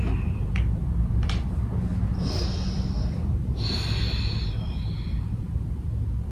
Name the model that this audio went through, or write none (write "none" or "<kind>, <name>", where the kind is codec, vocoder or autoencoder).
none